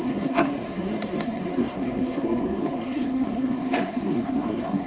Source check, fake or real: fake